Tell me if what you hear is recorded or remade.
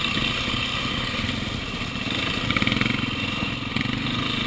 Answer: recorded